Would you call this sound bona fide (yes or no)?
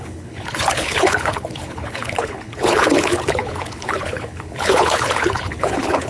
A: no